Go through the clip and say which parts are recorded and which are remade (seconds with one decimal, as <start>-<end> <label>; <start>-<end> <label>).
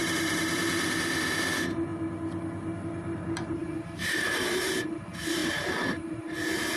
0.0-1.9 remade; 1.9-2.8 recorded; 2.8-6.8 remade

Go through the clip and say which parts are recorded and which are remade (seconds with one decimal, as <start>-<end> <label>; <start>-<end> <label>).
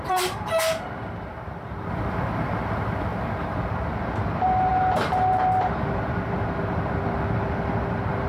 0.0-8.3 remade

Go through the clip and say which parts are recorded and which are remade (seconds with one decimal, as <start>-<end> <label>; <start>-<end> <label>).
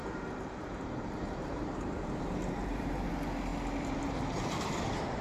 0.0-3.1 remade; 3.1-5.2 recorded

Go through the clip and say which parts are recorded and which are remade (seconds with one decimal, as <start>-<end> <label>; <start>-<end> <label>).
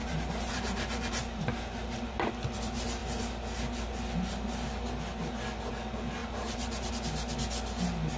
0.0-2.3 remade; 2.3-6.2 recorded; 6.2-6.9 remade; 6.9-8.2 recorded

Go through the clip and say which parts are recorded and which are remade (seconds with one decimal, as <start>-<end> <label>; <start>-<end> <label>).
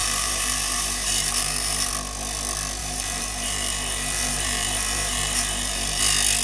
0.0-1.9 remade; 1.9-2.8 recorded; 2.8-6.0 remade; 6.0-6.4 recorded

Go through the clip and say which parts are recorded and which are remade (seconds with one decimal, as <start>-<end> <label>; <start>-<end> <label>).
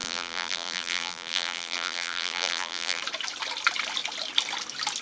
0.0-3.0 remade; 3.0-5.0 recorded